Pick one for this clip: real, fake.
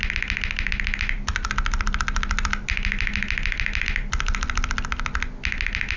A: real